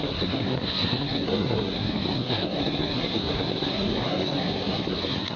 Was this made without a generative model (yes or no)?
no